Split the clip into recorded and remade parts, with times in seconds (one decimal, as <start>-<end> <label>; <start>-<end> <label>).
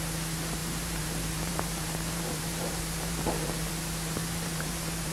0.0-0.6 recorded; 0.6-3.7 remade; 3.7-4.2 recorded; 4.2-5.1 remade